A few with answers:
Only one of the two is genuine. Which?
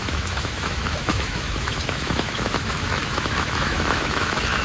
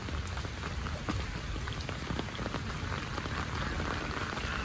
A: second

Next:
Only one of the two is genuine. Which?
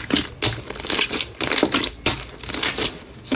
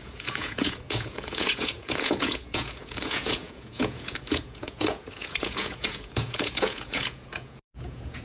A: first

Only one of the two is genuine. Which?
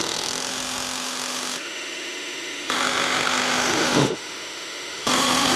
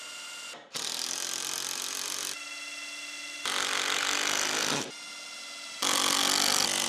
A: second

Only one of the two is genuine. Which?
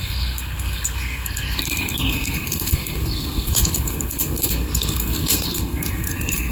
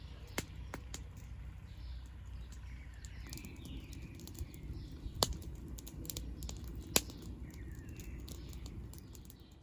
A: second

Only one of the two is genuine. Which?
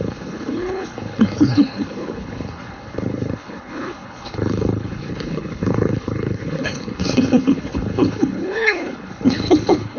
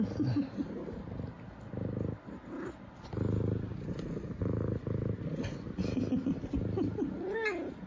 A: second